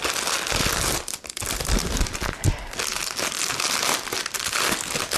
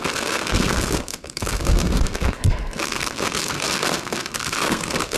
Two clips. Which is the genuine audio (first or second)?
first